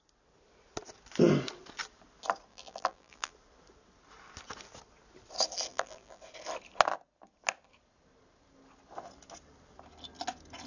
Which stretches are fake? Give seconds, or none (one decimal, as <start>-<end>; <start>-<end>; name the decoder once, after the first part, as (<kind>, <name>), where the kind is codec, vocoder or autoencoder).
2.5-3.3 (vocoder, BigVGAN v2); 5.7-6.2